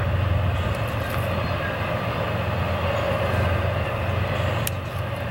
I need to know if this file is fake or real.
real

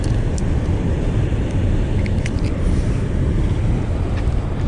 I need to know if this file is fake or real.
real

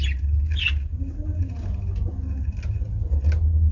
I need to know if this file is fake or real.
real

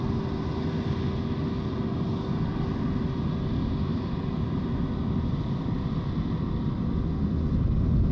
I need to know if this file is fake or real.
real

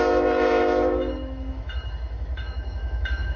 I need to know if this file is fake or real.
fake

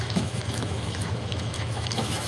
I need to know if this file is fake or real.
fake